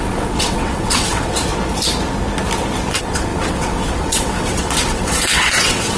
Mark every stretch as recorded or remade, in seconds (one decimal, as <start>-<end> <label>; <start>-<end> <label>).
0.0-1.5 remade; 1.5-2.9 recorded; 2.9-6.0 remade